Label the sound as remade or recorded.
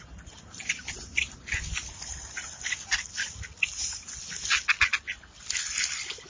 recorded